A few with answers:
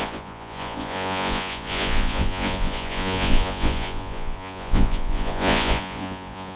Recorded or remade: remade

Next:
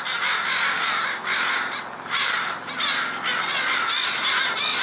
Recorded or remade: recorded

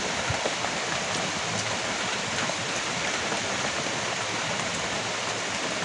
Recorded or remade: remade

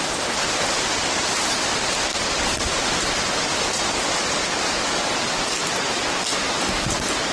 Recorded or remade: recorded